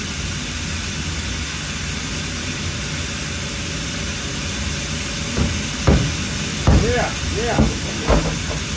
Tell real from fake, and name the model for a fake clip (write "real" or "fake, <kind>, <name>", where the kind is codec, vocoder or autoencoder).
real